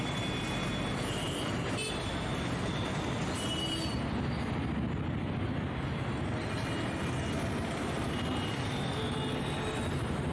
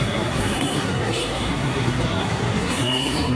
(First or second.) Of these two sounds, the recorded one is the first